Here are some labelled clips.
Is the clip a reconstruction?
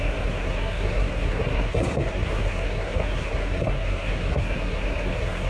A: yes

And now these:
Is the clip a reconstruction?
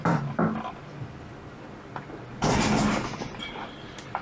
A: no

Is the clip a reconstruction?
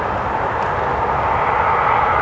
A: no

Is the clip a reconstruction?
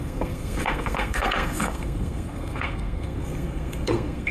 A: yes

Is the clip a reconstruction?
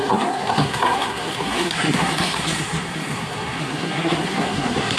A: yes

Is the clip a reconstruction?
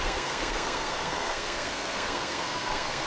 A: yes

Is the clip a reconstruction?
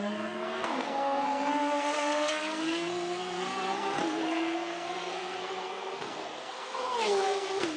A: yes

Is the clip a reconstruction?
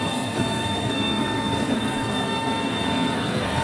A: yes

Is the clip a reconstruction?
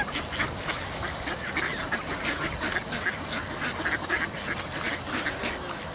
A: no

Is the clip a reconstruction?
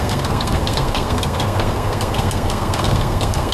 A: yes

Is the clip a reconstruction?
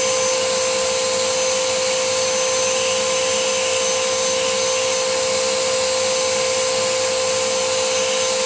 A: no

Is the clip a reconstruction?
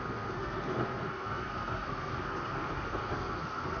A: yes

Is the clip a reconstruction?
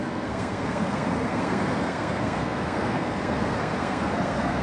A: yes